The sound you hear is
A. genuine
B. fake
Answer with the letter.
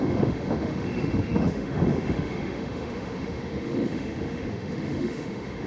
B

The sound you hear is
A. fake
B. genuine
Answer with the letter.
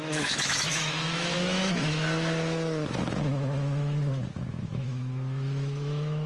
A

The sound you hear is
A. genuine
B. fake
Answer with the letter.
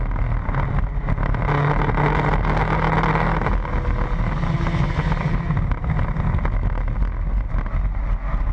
A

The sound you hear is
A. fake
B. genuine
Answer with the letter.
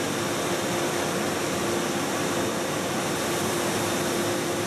B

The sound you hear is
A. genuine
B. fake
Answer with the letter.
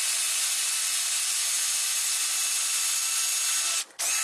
A